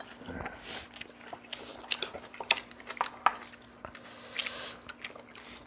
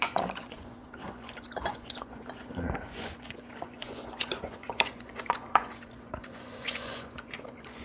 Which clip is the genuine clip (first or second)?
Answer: first